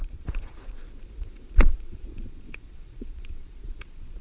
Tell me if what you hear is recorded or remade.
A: remade